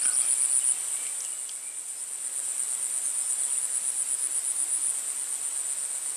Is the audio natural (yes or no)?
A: yes